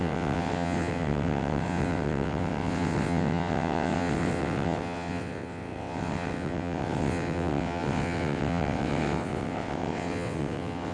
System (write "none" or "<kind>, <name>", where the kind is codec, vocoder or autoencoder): vocoder, WaveNeXt